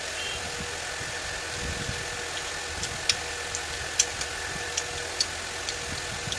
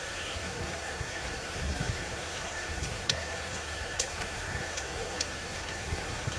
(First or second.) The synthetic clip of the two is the second